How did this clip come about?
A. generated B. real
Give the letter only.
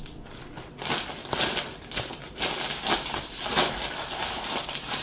B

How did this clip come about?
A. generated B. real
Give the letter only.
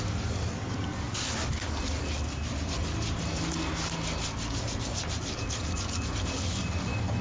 B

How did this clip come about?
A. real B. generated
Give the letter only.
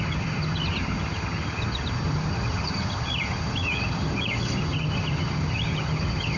B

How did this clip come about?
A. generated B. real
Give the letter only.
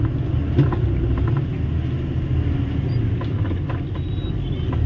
B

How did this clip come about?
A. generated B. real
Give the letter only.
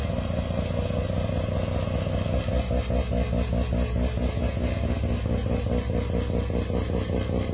B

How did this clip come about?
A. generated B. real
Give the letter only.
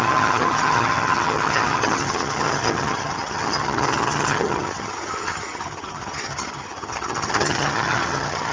A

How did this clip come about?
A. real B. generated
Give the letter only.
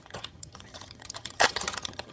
B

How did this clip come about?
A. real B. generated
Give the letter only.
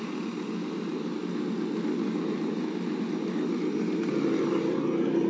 A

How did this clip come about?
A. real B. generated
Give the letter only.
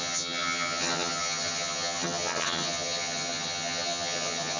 B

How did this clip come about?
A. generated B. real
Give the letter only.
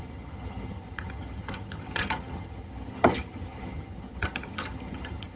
A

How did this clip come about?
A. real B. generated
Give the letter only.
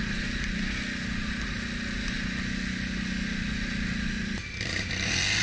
A